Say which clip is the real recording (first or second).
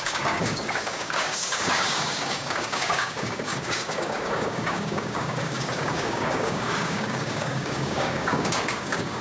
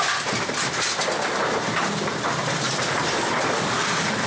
second